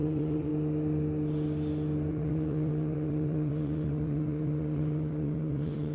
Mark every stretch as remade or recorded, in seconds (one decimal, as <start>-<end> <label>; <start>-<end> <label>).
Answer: 0.0-0.5 remade; 0.5-2.1 recorded; 2.1-5.9 remade